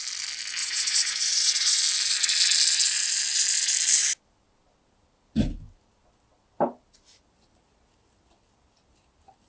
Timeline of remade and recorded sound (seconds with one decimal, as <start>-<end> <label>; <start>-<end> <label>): 0.0-0.6 recorded; 0.6-1.8 remade; 1.8-9.5 recorded